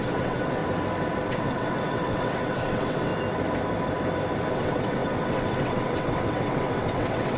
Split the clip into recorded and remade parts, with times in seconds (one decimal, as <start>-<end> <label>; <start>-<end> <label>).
0.0-0.6 remade; 0.6-1.3 recorded; 1.3-3.1 remade; 3.1-4.5 recorded; 4.5-7.4 remade